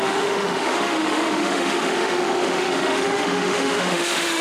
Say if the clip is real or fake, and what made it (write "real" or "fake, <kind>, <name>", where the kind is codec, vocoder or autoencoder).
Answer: fake, autoencoder, DAC-VAE